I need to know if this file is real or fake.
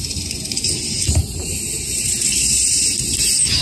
fake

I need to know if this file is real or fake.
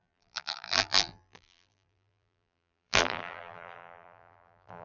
fake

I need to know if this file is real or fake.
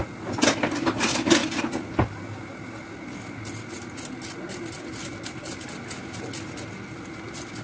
real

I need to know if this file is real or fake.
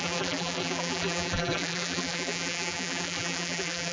fake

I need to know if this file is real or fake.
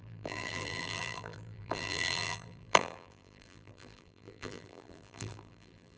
fake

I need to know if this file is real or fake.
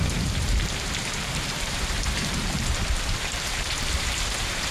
fake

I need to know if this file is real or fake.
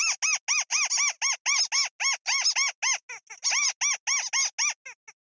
real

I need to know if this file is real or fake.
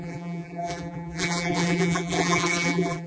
fake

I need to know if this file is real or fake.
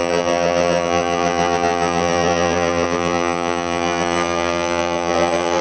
fake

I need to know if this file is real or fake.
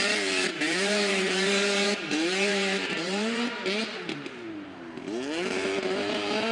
fake